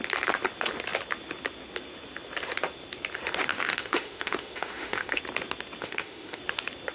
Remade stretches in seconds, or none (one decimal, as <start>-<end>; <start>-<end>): 3.5-5.2; 5.8-6.4